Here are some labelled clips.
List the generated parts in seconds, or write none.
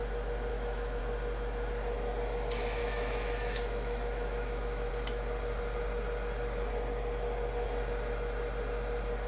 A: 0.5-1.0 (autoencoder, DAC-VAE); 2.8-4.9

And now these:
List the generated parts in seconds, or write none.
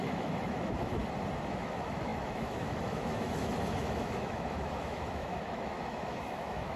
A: 0.0-1.0 (autoencoder, DAC-VAE); 1.5-6.8